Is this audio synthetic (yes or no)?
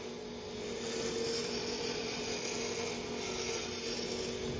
no